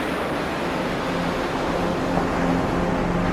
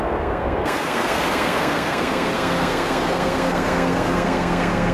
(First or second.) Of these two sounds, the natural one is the first